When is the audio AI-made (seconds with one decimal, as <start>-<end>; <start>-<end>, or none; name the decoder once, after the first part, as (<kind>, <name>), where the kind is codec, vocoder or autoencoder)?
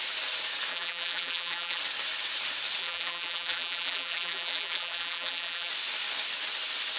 0.7-1.8 (vocoder, BigVGAN v2); 2.8-5.7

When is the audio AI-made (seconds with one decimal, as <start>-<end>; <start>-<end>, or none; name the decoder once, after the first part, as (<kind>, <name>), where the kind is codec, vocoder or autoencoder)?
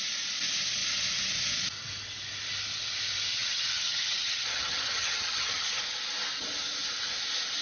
3.3-5.8 (vocoder, HiFi-GAN)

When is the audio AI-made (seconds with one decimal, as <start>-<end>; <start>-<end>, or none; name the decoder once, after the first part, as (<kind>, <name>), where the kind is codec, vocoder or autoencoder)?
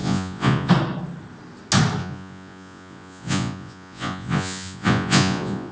0.0-0.7 (vocoder, Vocos); 2.0-5.7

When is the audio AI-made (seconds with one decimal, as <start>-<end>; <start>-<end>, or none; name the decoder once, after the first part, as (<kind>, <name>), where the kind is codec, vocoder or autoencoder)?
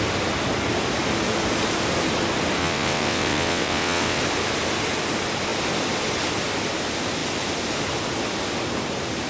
2.6-4.2 (vocoder, WaveNeXt)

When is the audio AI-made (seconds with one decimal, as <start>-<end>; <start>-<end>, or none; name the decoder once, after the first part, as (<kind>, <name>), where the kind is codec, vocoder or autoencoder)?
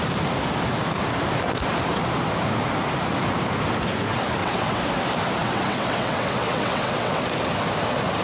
4.4-5.0 (vocoder, WaveNeXt); 5.4-7.2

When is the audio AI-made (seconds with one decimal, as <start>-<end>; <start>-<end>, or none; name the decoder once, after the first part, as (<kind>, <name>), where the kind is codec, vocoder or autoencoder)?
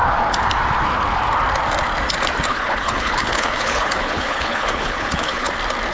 2.5-5.5 (codec, HILCodec)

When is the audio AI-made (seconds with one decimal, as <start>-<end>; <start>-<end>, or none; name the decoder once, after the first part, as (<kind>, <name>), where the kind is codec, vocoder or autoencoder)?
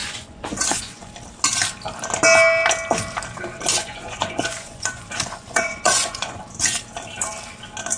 0.0-1.1 (vocoder, Vocos); 3.7-6.4